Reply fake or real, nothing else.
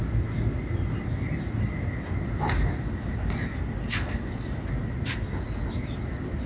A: real